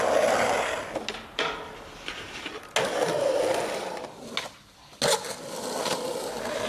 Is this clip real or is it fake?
real